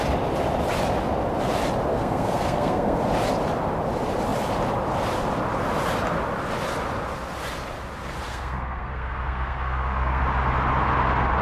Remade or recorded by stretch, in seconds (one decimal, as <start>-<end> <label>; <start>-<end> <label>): 0.0-1.9 recorded; 1.9-3.0 remade; 3.0-8.3 recorded; 8.3-10.2 remade; 10.2-11.4 recorded